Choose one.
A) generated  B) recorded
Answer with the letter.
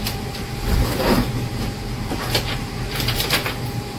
A